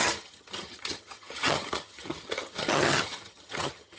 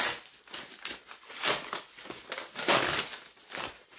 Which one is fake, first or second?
first